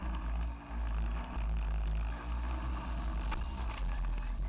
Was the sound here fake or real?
real